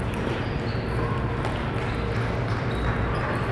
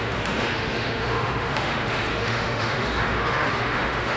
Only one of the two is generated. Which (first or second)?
second